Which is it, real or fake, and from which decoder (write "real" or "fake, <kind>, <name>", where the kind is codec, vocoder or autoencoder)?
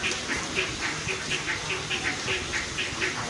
fake, vocoder, BigVGAN v2